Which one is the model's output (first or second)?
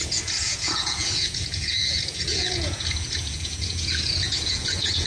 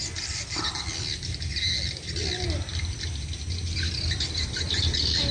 first